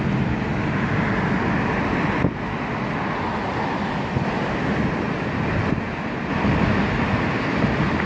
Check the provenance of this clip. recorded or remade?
recorded